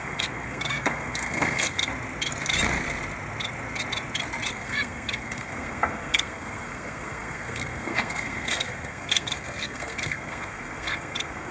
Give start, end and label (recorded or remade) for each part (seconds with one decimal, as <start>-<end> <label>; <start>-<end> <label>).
0.0-1.9 remade; 1.9-4.5 recorded; 4.5-11.5 remade

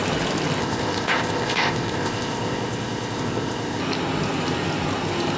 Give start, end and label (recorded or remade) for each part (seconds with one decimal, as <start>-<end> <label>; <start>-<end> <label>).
0.0-0.6 recorded; 0.6-3.8 remade; 3.8-5.4 recorded

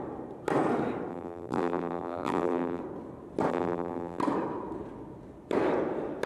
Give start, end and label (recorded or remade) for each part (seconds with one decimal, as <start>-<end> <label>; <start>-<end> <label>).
0.0-1.1 recorded; 1.1-2.8 remade; 2.8-3.5 recorded; 3.5-4.2 remade; 4.2-6.3 recorded

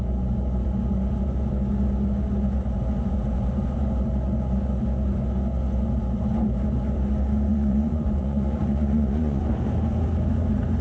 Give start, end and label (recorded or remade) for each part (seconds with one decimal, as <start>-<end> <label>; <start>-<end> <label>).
0.0-7.5 recorded; 7.5-9.4 remade; 9.4-10.8 recorded

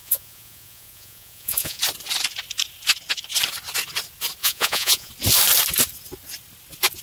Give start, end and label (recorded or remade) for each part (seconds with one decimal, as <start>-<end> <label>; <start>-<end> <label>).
0.0-1.8 remade; 1.8-4.4 recorded; 4.4-5.1 remade; 5.1-7.0 recorded

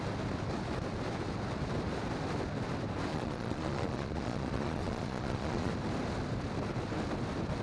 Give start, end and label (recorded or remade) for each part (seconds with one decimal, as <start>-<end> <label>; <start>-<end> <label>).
0.0-3.1 recorded; 3.1-5.7 remade; 5.7-7.6 recorded